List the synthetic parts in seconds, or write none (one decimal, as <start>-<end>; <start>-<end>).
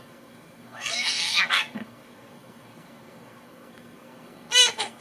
0.0-5.0